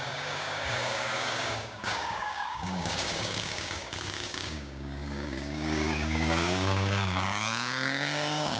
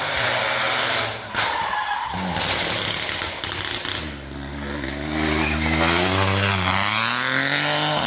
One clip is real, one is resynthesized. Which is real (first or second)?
second